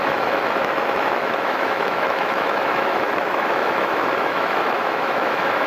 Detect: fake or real fake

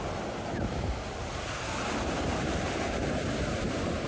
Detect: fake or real real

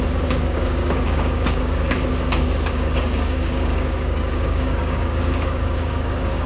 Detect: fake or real fake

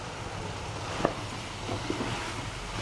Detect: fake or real real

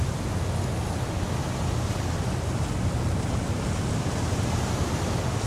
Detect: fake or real real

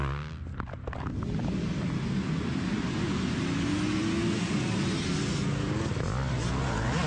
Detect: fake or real real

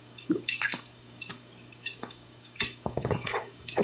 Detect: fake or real fake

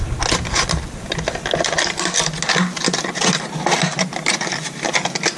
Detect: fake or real real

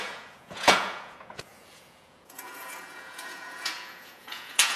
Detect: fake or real fake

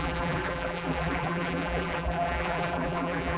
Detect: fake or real fake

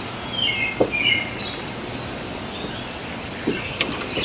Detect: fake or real real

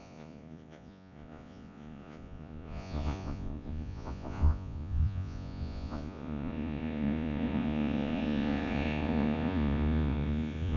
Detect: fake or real fake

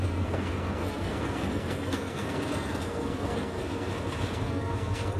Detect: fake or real fake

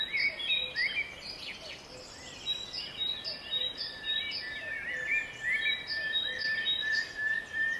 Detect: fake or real real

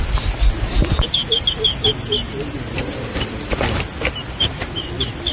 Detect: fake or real real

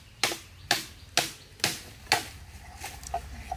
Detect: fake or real real